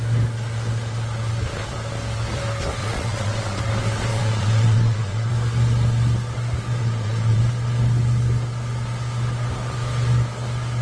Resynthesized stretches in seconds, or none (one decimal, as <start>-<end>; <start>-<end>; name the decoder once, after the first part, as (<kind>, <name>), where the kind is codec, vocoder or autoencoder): 2.8-3.6 (vocoder, Vocos); 4.1-5.3; 6.8-7.4